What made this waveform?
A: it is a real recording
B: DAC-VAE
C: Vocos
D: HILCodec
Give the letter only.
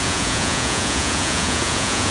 C